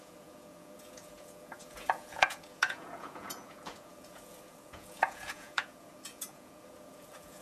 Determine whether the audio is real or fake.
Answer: fake